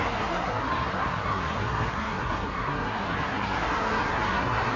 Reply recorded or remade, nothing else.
remade